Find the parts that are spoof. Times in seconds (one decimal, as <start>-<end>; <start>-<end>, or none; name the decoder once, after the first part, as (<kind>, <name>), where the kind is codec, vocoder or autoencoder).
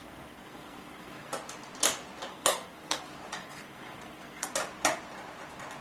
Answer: 0.0-1.3 (codec, SNAC); 2.3-3.0; 3.4-4.5